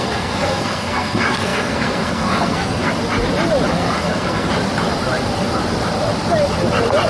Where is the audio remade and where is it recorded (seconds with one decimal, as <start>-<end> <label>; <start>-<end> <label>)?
0.0-2.9 remade; 2.9-3.7 recorded; 3.7-4.5 remade; 4.5-7.1 recorded